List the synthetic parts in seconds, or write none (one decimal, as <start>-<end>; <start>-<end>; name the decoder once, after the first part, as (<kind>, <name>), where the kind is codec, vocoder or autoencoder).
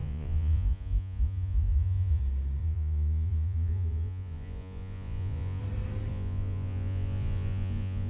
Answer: 0.0-2.2 (vocoder, Vocos); 2.6-5.6; 6.1-8.1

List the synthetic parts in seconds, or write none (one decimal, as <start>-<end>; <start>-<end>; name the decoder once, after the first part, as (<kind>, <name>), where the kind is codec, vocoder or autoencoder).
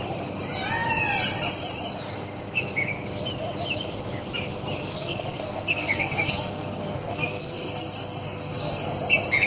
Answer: 4.8-8.9 (codec, SNAC)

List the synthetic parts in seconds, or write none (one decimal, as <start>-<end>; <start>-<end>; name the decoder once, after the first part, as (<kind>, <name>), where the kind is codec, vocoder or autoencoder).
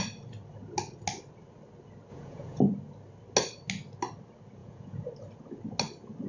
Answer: 2.1-2.6 (vocoder, Vocos); 4.6-5.1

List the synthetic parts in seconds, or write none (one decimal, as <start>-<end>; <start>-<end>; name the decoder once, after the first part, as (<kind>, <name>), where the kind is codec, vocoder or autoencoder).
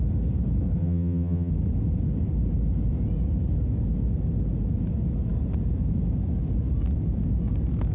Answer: 0.8-1.5 (vocoder, HiFi-GAN)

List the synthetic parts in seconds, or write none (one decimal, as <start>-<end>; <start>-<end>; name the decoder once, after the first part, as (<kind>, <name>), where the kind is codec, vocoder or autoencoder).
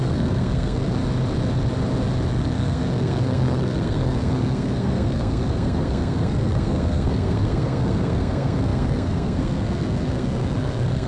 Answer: 0.0-1.0 (codec, SNAC); 2.3-11.1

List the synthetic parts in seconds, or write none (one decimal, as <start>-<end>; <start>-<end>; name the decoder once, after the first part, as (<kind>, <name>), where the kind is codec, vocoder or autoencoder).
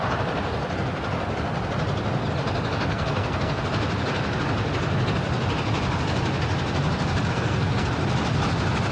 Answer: 2.9-3.6 (codec, SNAC); 7.3-7.9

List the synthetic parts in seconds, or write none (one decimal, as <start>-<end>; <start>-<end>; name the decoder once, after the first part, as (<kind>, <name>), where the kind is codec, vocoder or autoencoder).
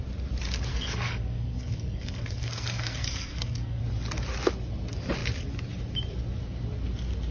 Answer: 0.7-3.8 (codec, SNAC)